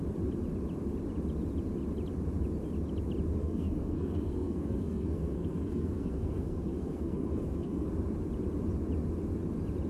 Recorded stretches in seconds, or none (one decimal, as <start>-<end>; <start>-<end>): 0.0-3.4; 7.9-9.9